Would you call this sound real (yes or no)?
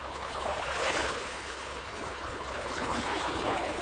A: no